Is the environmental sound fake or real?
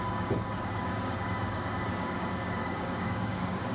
fake